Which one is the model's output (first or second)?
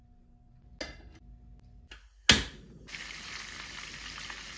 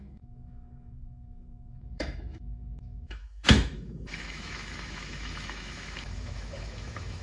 second